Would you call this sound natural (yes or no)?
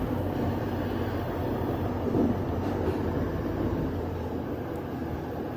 yes